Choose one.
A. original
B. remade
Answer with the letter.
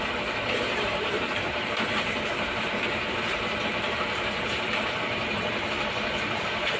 B